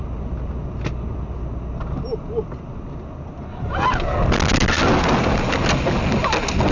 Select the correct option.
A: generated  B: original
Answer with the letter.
B